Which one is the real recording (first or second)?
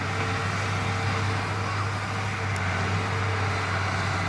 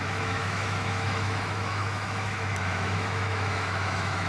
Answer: first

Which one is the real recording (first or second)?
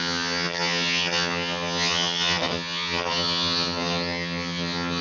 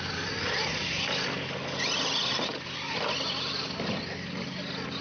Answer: second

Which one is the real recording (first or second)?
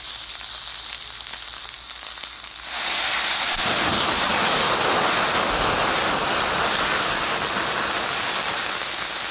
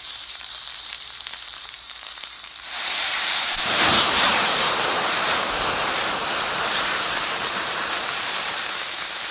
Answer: first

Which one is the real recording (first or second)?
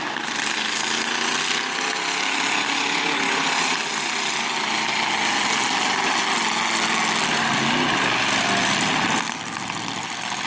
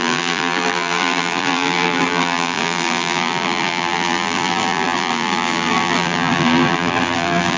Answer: first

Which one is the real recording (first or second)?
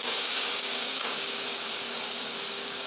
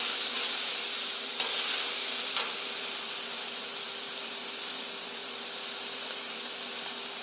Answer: second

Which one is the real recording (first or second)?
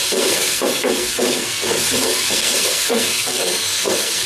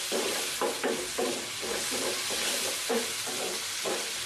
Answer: second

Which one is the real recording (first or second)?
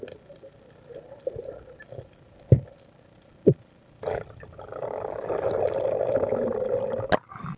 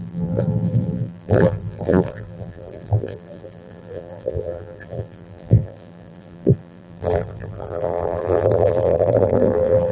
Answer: first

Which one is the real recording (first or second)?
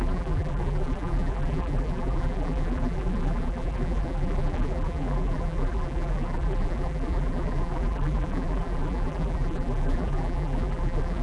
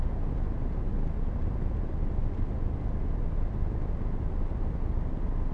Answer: second